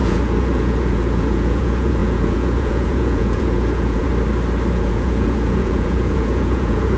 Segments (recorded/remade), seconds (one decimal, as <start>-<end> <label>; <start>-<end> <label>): 0.0-4.1 remade; 4.1-4.7 recorded; 4.7-7.0 remade